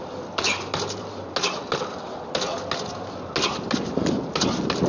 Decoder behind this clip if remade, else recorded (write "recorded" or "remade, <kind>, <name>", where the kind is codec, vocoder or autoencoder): recorded